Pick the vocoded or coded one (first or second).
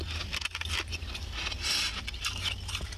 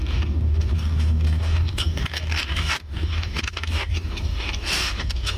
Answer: second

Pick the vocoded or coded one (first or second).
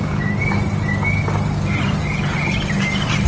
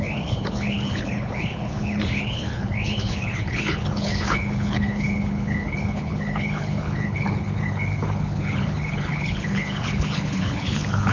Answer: second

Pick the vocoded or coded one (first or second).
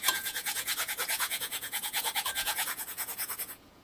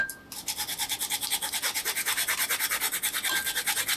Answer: first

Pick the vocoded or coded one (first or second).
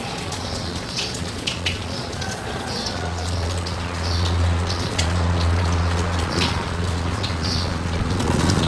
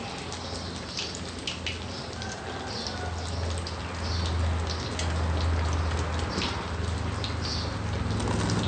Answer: first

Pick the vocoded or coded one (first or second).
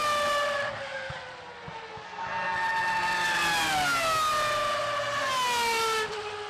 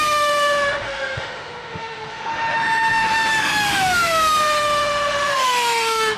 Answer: second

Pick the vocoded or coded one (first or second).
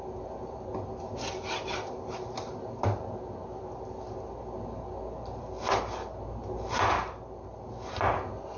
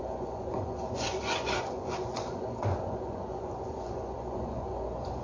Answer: second